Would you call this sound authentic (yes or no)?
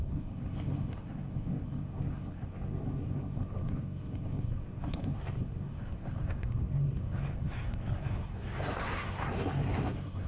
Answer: no